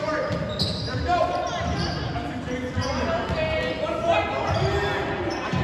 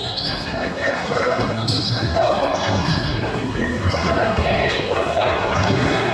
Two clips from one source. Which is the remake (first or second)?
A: second